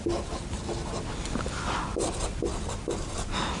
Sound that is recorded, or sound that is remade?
recorded